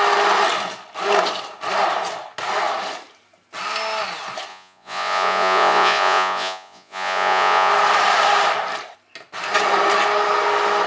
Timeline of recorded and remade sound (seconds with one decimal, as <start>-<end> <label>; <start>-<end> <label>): 0.0-4.5 recorded; 4.5-7.7 remade; 7.7-10.9 recorded